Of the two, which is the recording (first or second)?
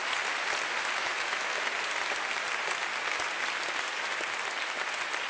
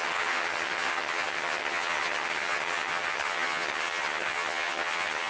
first